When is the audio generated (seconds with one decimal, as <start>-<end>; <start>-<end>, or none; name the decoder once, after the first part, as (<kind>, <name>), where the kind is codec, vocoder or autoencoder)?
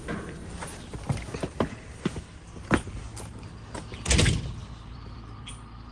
4.6-5.5 (vocoder, BigVGAN v2)